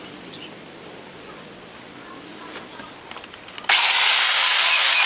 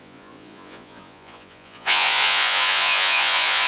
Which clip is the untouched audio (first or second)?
first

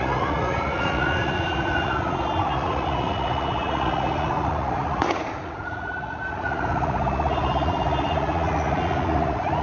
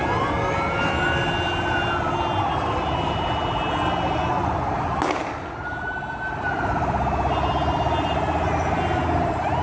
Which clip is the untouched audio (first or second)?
second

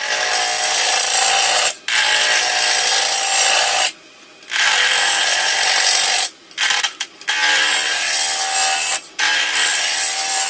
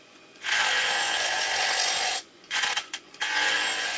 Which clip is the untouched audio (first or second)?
first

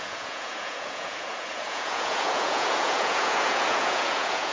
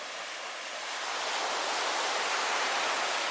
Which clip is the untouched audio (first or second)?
second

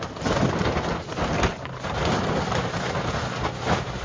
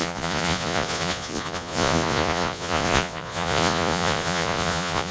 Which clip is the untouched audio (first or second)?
first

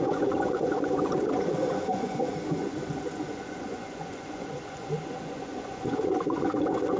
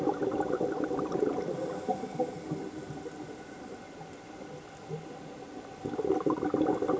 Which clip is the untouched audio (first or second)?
second